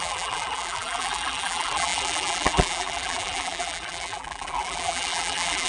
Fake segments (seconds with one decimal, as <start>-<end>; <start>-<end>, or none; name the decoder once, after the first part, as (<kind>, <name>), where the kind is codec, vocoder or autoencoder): 0.0-5.7 (vocoder, BigVGAN v2)

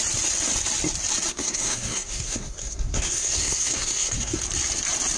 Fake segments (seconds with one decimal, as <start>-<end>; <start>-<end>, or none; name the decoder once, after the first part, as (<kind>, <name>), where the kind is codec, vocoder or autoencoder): 1.3-4.4 (codec, SNAC)

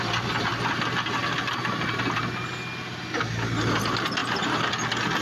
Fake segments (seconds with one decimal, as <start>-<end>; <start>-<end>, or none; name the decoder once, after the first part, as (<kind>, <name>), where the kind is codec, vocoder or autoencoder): 4.2-4.7 (vocoder, BigVGAN v2)